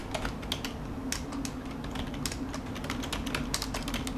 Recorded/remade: recorded